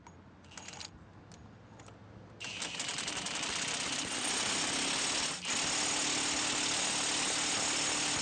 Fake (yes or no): no